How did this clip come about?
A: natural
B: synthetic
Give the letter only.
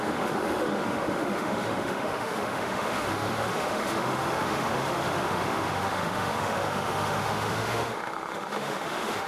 B